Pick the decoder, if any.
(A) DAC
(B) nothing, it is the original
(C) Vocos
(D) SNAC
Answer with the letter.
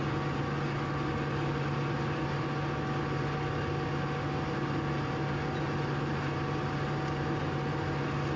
B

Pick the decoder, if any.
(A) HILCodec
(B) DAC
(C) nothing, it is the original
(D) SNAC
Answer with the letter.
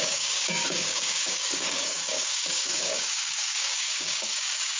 B